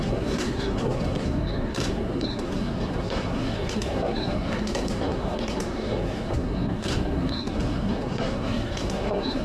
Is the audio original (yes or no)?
no